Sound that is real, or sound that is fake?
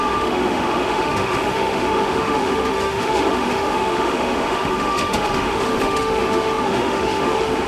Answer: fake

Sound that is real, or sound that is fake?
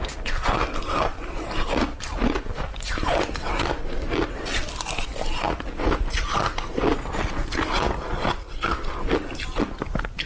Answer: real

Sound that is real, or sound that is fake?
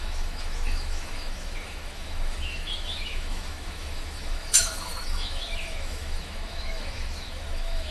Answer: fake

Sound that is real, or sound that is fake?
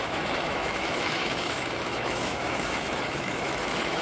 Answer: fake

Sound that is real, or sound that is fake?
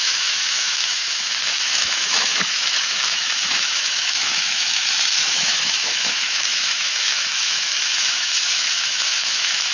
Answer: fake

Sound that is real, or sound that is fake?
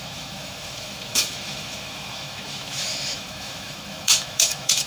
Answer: fake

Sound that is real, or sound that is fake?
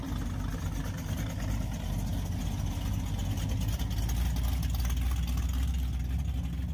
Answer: real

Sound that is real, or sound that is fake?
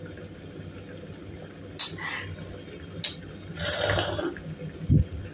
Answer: real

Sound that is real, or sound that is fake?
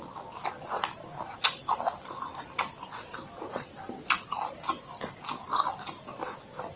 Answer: real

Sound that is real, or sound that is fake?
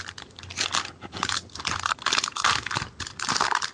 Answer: real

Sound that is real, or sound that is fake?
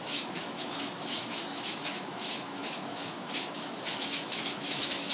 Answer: fake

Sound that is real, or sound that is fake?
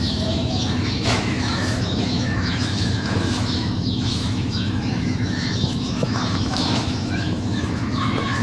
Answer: fake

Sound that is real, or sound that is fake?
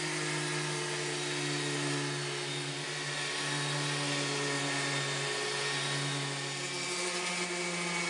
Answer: real